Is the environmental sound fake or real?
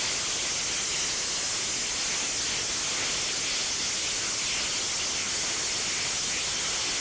real